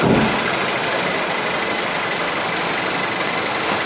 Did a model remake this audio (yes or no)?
no